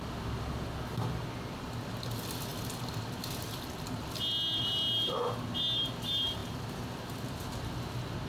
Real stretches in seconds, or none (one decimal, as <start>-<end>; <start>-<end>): 0.0-8.3